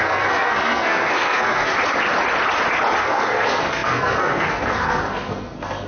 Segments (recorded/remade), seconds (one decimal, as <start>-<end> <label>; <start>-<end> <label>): 0.0-1.7 remade; 1.7-3.0 recorded; 3.0-5.9 remade

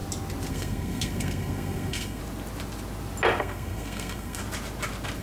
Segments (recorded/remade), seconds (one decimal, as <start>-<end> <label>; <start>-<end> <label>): 0.0-0.5 recorded; 0.5-2.2 remade; 2.2-3.4 recorded; 3.4-4.4 remade; 4.4-5.2 recorded

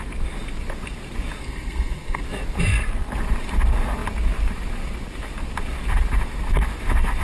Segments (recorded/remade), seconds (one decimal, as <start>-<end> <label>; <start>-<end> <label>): 0.0-1.4 recorded; 1.4-2.2 remade; 2.2-7.2 recorded

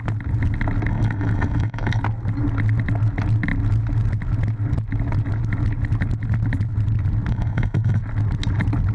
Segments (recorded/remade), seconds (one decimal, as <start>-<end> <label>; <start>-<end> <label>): 0.0-0.9 recorded; 0.9-2.0 remade; 2.0-7.3 recorded; 7.3-8.0 remade; 8.0-8.9 recorded

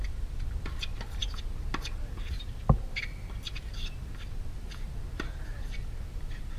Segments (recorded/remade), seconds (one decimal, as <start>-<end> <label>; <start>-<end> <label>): 0.0-6.6 recorded

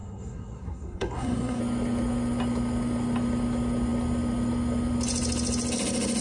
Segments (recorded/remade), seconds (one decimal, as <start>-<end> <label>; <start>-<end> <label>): 0.0-1.6 remade; 1.6-6.2 recorded

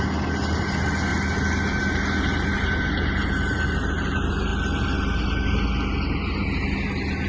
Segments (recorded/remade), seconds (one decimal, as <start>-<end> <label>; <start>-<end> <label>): 0.0-7.3 recorded

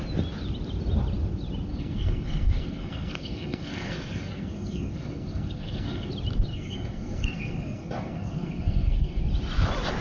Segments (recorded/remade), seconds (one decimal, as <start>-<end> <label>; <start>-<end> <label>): 0.0-1.7 recorded; 1.7-6.1 remade; 6.1-6.5 recorded; 6.5-9.2 remade; 9.2-10.0 recorded